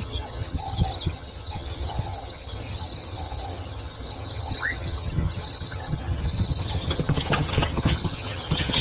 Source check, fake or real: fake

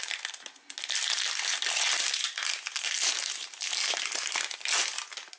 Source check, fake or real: real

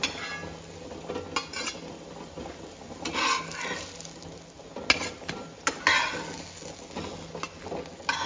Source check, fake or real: real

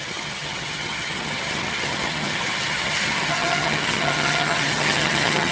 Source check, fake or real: fake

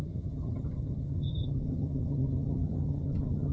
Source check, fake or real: fake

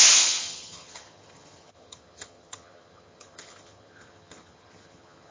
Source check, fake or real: fake